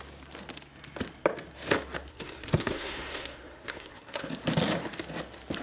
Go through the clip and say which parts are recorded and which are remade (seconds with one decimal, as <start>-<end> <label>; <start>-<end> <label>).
0.0-2.1 recorded; 2.1-4.2 remade; 4.2-5.6 recorded